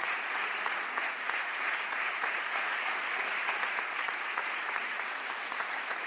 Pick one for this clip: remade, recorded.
remade